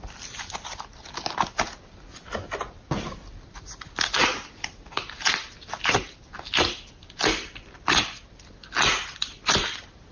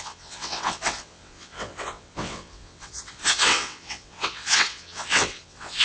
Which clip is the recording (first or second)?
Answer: first